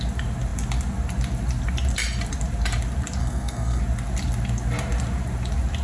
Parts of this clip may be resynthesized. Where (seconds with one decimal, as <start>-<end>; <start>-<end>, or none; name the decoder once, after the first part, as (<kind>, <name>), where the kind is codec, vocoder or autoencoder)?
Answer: 3.2-3.8 (codec, SNAC)